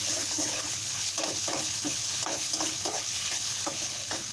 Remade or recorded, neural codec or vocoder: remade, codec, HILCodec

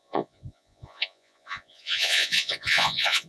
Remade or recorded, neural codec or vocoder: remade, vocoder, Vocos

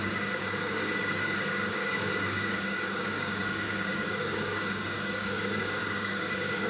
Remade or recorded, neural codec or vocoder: remade, codec, DAC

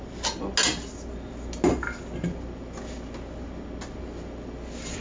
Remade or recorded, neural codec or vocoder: recorded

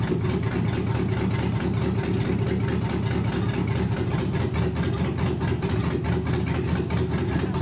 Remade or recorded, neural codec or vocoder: recorded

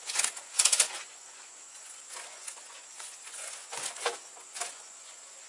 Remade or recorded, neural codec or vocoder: remade, vocoder, Vocos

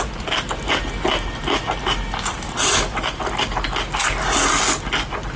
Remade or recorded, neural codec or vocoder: recorded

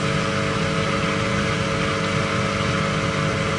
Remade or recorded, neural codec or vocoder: recorded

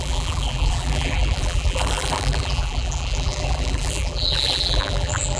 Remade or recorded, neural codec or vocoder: remade, vocoder, BigVGAN v2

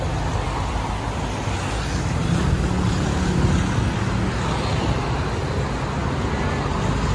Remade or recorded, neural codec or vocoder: recorded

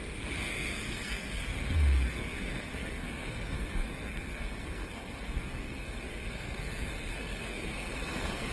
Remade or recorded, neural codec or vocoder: remade, codec, SNAC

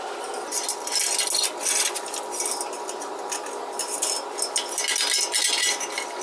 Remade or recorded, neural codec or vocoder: recorded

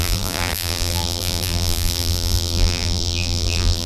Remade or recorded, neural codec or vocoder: remade, vocoder, BigVGAN v2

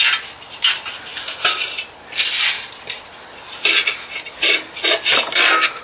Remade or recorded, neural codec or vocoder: recorded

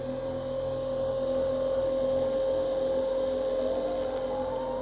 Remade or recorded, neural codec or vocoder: recorded